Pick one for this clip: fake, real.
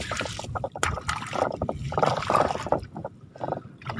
real